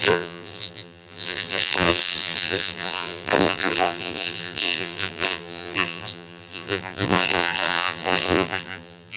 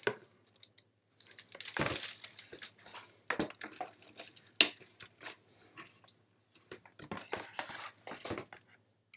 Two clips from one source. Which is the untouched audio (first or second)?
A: second